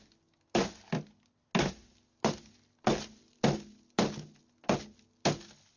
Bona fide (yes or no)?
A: yes